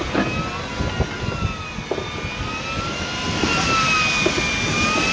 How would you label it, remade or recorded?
recorded